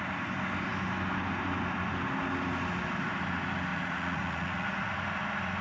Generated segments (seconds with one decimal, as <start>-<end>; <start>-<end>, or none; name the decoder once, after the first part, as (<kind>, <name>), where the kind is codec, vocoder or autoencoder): 3.7-4.9 (vocoder, Vocos)